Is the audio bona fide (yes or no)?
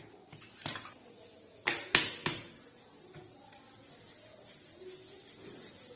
yes